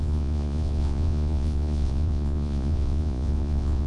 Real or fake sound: fake